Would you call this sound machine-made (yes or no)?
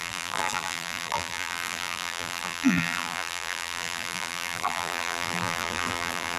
yes